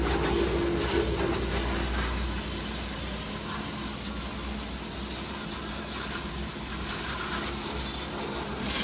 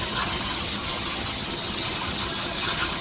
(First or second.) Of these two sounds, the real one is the first